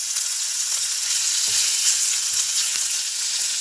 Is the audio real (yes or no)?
no